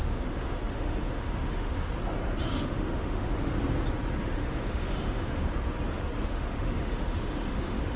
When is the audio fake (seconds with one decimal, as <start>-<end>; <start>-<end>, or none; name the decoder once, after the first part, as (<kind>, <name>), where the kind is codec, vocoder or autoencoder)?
0.0-1.9 (autoencoder, DAC-VAE); 2.4-3.5; 4.2-5.5; 6.3-8.0